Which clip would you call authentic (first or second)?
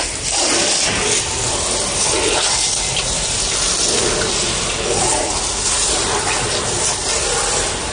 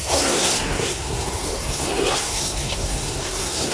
first